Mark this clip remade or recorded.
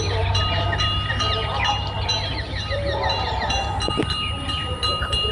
remade